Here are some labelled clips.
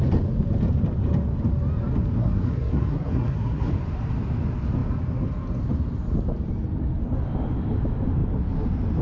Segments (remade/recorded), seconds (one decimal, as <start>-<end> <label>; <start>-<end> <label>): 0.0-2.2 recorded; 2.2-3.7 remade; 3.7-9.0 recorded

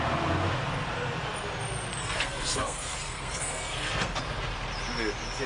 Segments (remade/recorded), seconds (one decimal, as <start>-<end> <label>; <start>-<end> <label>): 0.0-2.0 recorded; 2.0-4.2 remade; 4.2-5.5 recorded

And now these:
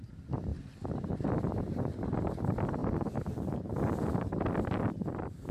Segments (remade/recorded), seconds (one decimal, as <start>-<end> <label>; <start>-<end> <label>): 0.0-5.5 recorded